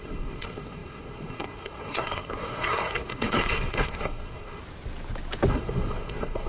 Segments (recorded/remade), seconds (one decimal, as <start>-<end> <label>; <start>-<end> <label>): 0.0-4.6 remade; 4.6-5.5 recorded; 5.5-6.5 remade